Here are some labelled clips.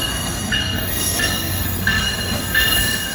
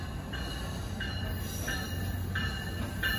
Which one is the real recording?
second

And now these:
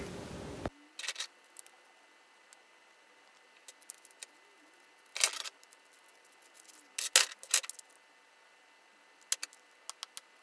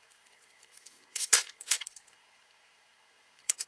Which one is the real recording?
first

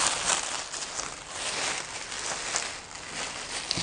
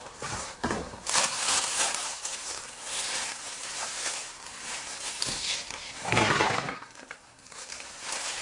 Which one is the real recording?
first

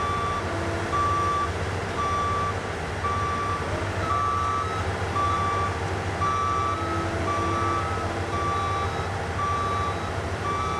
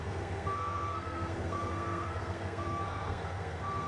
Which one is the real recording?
first